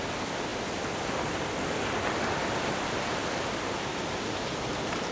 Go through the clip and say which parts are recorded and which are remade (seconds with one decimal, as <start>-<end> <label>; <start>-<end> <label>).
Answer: 0.0-5.1 remade